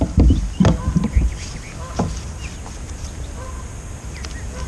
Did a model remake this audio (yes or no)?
no